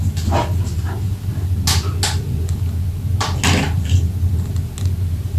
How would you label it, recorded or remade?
recorded